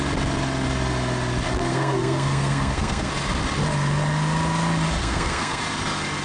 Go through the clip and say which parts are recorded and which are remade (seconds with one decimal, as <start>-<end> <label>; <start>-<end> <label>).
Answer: 0.0-1.7 recorded; 1.7-3.1 remade; 3.1-5.0 recorded; 5.0-5.6 remade; 5.6-6.2 recorded